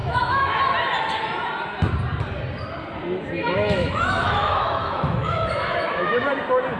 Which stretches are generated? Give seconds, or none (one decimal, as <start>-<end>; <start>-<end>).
0.0-0.6; 3.4-6.3